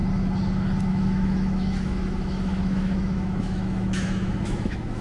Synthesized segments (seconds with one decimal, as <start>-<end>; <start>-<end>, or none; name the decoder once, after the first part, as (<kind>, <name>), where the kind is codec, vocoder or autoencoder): 0.9-5.0 (autoencoder, DAC-VAE)